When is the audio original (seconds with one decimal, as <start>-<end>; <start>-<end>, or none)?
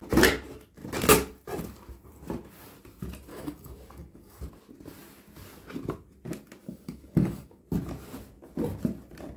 0.0-3.3; 4.4-6.6; 7.6-9.4